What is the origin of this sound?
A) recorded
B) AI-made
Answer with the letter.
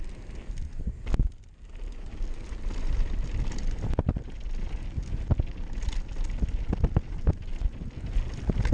A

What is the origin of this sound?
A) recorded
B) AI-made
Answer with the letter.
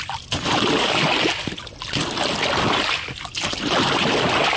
A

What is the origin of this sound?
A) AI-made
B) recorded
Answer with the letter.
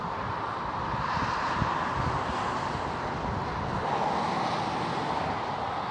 B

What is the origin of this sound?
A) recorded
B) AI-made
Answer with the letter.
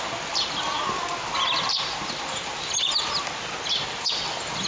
A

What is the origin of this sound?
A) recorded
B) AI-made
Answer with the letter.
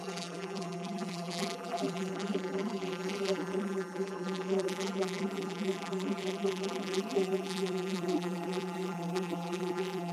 B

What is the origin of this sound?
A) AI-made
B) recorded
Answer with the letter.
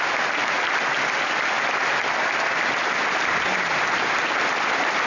B